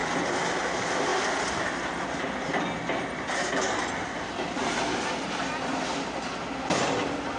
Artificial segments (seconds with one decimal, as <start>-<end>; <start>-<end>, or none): none